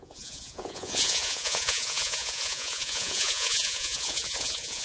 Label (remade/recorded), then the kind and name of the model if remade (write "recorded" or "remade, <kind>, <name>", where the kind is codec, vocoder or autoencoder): remade, vocoder, Vocos